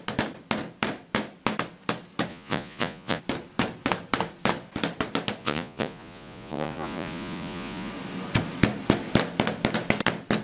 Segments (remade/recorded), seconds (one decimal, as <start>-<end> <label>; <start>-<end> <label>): 0.0-2.3 recorded; 2.3-3.2 remade; 3.2-5.4 recorded; 5.4-7.9 remade; 7.9-10.4 recorded